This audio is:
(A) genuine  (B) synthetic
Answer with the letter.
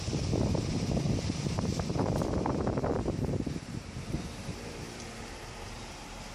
B